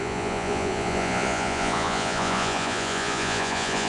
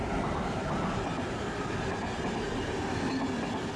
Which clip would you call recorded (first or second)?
second